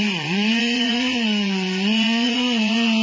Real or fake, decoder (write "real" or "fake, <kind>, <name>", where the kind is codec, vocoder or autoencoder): fake, vocoder, Vocos